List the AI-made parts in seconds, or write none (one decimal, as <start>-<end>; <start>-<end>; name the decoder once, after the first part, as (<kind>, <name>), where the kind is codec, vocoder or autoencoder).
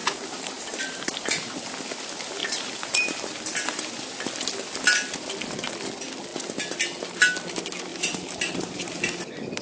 0.0-0.8 (vocoder, BigVGAN v2); 2.4-3.3; 7.9-9.0